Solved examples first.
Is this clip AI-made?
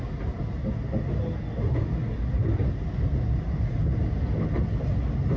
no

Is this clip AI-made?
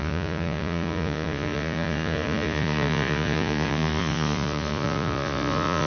yes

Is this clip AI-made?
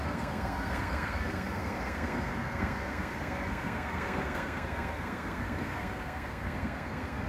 yes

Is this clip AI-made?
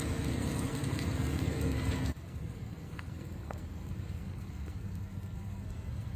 yes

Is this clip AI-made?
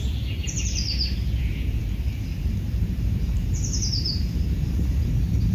yes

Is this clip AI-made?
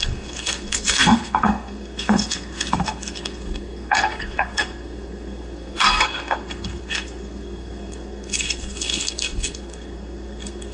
yes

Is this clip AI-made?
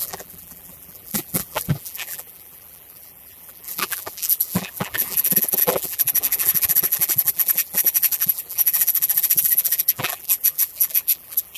yes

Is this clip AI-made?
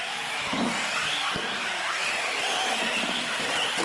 no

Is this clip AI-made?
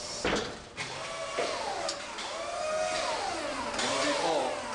no